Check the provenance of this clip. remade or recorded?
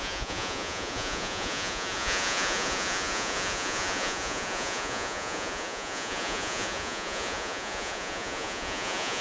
remade